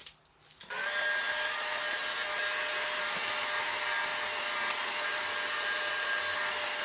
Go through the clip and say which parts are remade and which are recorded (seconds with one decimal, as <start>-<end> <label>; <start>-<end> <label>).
0.0-6.8 recorded